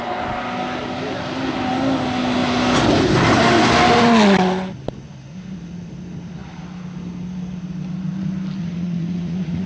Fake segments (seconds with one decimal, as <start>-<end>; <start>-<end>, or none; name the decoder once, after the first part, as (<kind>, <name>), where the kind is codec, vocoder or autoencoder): 8.6-9.7 (vocoder, Vocos)